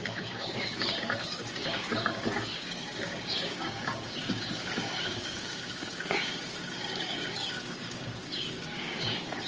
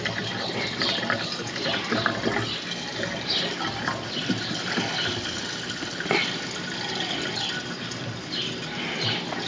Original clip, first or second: second